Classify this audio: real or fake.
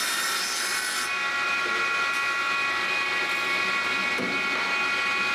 real